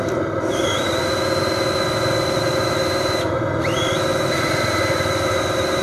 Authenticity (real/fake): real